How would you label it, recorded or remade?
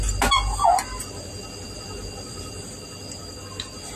recorded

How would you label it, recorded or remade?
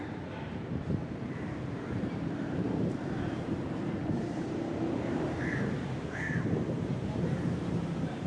remade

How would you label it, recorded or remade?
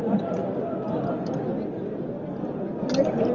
recorded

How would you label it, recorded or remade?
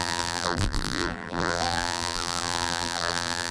remade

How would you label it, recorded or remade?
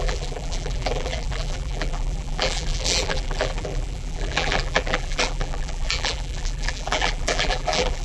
remade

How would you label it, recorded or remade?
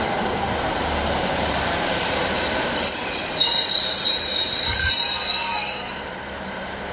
remade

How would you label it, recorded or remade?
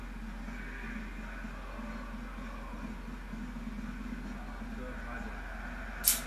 recorded